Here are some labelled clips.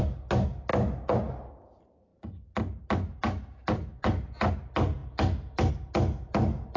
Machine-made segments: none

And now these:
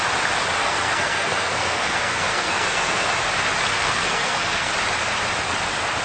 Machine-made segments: 0.6-3.3 (codec, SNAC); 3.7-4.7

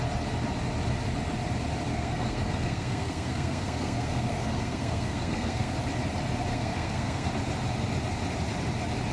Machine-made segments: 1.9-5.8 (codec, SNAC); 6.5-7.3